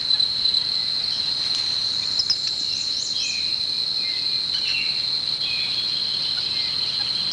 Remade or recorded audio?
recorded